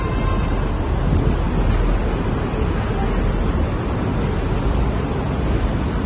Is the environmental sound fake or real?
real